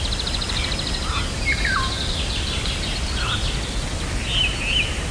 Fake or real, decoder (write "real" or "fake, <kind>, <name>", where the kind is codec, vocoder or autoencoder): real